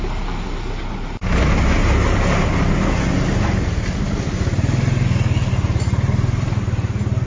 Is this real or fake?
real